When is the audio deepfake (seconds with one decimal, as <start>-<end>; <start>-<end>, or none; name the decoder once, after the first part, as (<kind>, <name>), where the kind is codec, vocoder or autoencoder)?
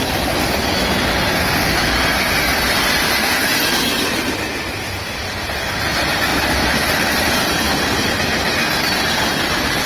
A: none